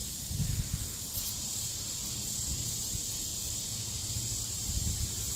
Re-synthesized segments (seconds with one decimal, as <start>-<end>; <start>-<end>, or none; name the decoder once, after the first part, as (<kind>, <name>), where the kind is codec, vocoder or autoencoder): 0.0-1.7 (vocoder, BigVGAN v2); 3.3-5.4